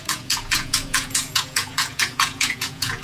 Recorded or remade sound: remade